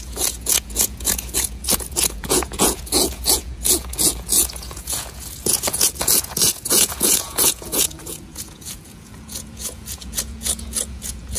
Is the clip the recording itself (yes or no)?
no